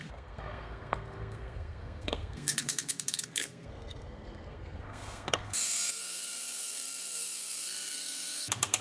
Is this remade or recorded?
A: remade